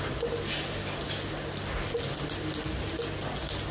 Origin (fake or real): real